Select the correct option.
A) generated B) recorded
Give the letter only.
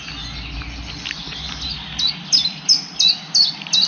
B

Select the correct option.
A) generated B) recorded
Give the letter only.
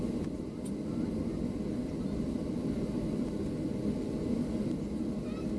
B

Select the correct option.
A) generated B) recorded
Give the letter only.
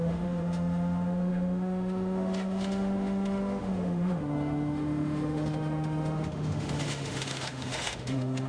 A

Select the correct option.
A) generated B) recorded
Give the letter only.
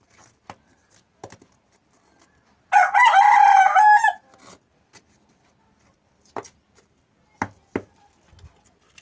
B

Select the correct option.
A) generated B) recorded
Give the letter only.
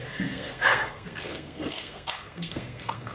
A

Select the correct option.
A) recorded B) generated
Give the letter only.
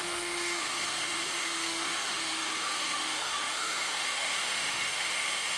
B